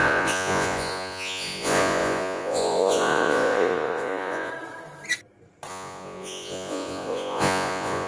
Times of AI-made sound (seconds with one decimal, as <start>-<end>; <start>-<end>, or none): 0.0-4.5; 5.7-8.1